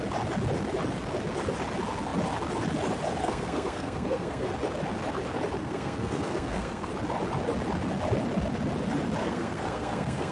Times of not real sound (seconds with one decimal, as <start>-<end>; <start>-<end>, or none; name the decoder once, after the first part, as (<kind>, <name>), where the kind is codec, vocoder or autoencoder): 3.2-4.5 (codec, SNAC); 5.6-6.9; 9.2-10.3